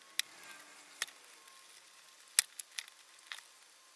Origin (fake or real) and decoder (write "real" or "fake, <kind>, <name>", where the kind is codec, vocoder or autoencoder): real